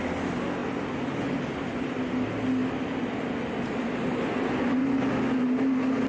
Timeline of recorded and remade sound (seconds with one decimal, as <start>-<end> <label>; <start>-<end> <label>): 0.0-6.1 recorded